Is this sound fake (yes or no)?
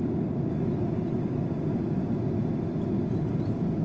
no